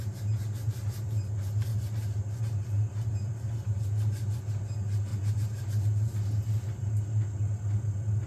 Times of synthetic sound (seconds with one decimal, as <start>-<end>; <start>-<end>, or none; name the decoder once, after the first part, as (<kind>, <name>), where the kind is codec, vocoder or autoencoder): none

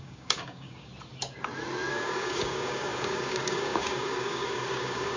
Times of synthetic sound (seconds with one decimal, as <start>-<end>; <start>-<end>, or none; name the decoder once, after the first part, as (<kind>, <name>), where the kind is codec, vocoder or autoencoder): 0.0-0.9 (codec, DAC); 1.9-5.2

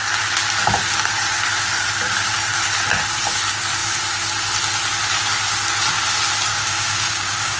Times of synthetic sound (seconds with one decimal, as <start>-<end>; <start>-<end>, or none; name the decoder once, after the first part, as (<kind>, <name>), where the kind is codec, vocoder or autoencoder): 6.5-7.6 (codec, DAC)

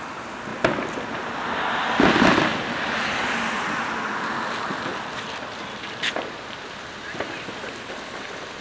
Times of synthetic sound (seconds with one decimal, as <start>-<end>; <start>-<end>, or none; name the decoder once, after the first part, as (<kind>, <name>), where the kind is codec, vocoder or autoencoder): none

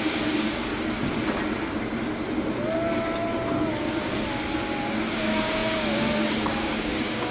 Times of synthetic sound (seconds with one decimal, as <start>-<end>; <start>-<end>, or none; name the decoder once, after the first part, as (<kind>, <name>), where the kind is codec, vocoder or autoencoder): 0.0-0.7 (codec, DAC); 5.1-7.3